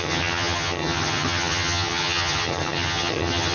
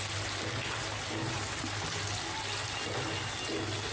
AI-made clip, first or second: first